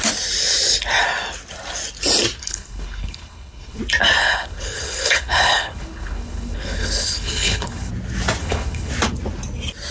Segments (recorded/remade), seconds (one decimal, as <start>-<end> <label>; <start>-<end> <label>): 0.0-2.4 recorded; 2.4-3.8 remade; 3.8-4.2 recorded; 4.2-7.9 remade; 7.9-8.4 recorded; 8.4-8.9 remade; 8.9-9.9 recorded